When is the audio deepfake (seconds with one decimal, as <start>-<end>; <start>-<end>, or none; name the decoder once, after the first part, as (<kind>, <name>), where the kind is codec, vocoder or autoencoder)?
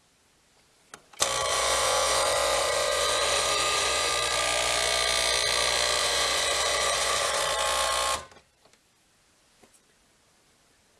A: 1.5-4.1 (vocoder, Vocos); 6.0-7.4